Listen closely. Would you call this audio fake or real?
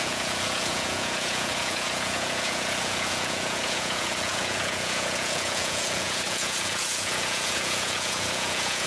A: fake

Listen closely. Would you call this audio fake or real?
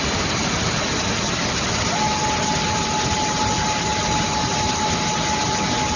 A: real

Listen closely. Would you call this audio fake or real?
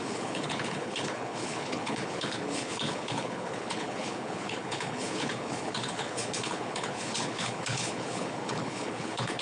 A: fake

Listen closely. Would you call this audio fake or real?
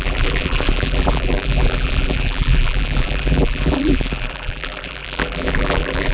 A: fake